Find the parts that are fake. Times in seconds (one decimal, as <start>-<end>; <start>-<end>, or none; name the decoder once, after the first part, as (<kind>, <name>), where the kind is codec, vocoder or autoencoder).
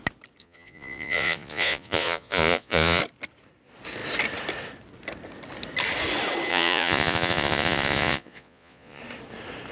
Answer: 0.4-3.0 (vocoder, Vocos); 6.5-9.0